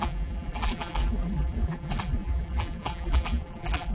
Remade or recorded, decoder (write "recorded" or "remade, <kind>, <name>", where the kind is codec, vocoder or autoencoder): remade, vocoder, BigVGAN v2